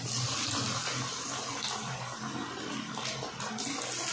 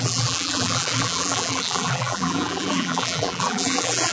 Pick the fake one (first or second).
second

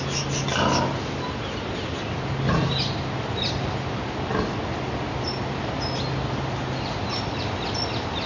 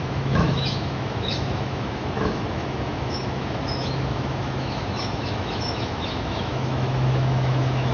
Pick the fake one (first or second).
second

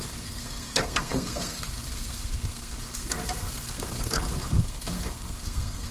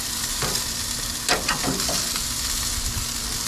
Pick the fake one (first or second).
first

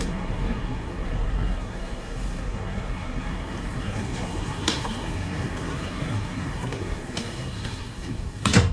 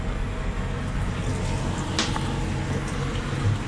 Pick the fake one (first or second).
first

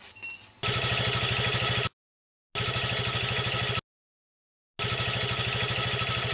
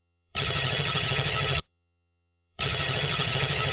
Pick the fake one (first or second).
second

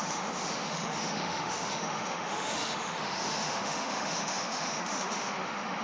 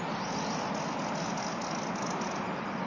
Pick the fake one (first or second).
first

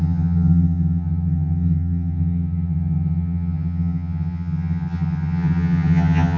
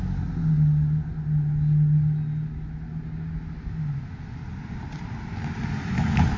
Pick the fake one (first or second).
first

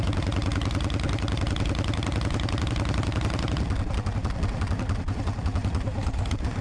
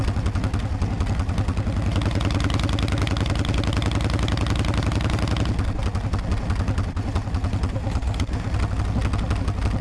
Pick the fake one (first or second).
first